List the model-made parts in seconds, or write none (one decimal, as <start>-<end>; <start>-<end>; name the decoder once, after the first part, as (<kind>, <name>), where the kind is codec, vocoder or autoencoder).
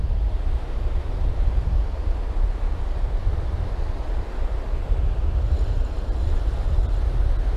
none